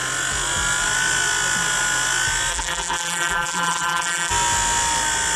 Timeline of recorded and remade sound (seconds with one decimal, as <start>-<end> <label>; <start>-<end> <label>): 0.0-2.5 recorded; 2.5-4.3 remade; 4.3-5.4 recorded